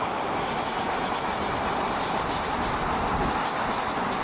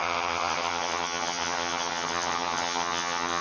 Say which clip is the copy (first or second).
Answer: second